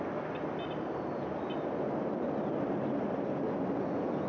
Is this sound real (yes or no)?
yes